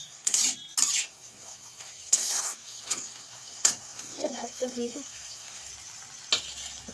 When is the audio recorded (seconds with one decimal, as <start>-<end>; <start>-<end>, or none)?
0.4-1.0; 5.7-6.9